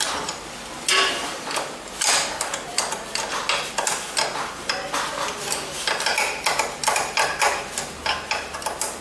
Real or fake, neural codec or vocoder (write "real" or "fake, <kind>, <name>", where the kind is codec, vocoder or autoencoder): real